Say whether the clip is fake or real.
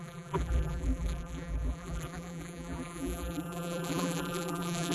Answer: fake